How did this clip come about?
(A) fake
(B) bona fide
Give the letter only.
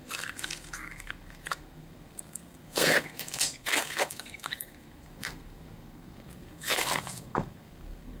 A